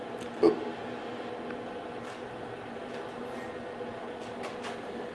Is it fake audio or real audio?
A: real